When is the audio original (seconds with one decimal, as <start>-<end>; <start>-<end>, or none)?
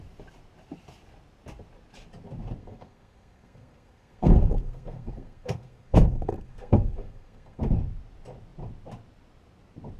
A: 0.0-2.6; 7.6-10.0